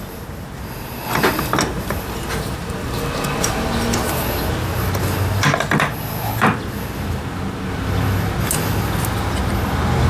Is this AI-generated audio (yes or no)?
no